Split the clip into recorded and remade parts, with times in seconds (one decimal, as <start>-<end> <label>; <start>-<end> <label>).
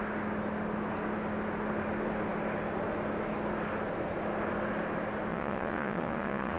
0.0-5.3 recorded; 5.3-6.6 remade